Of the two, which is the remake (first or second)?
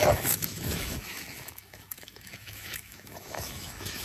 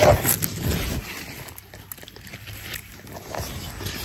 first